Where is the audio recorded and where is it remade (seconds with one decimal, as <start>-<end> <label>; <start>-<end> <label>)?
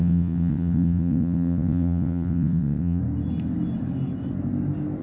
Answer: 0.0-3.0 remade; 3.0-5.0 recorded